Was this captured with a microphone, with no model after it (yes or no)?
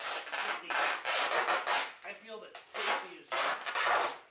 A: yes